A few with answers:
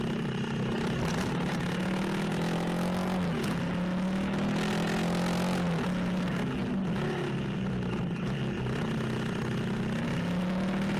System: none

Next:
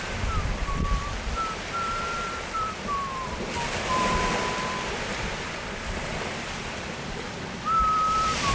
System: vocoder, BigVGAN v2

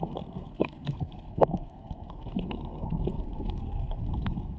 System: codec, SNAC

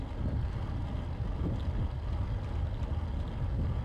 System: none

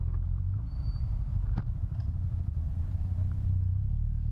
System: vocoder, BigVGAN v2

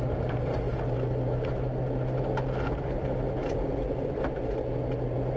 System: none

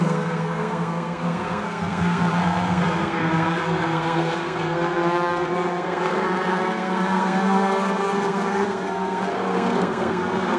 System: codec, SNAC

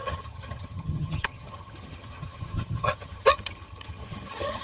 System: vocoder, HiFi-GAN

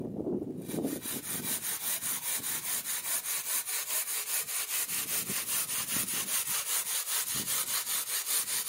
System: none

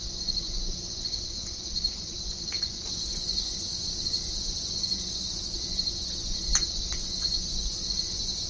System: vocoder, Vocos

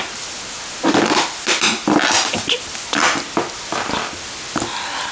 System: none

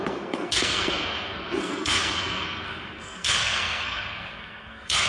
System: codec, SNAC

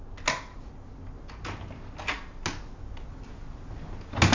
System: none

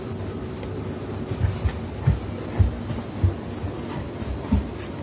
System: none